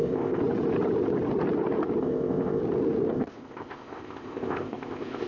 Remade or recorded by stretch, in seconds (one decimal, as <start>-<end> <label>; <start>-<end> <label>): 0.0-0.4 remade; 0.4-2.0 recorded; 2.0-2.6 remade; 2.6-3.1 recorded; 3.1-5.3 remade